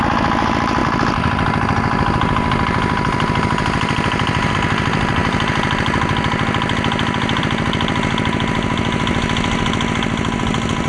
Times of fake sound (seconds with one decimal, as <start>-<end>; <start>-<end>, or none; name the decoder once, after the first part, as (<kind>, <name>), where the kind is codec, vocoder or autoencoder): none